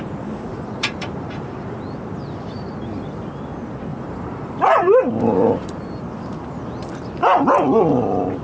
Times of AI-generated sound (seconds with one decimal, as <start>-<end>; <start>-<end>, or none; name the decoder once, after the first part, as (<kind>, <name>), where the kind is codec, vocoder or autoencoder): 0.5-1.8 (vocoder, BigVGAN v2); 3.9-5.8